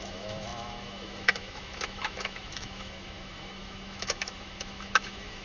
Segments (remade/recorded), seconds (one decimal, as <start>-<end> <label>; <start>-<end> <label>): 0.0-5.4 remade